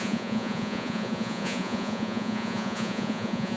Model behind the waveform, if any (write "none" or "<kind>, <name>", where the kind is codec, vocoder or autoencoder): vocoder, Vocos